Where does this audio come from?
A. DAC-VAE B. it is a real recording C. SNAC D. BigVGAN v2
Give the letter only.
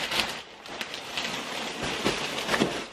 B